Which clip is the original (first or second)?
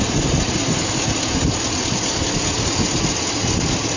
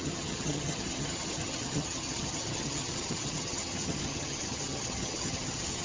first